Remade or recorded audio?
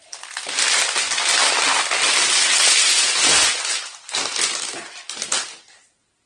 recorded